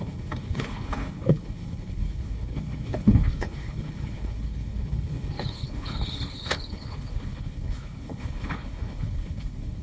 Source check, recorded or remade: remade